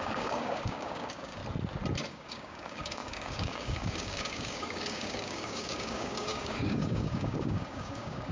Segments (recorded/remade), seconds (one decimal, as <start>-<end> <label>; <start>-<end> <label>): 0.0-1.4 remade; 1.4-2.1 recorded; 2.1-8.3 remade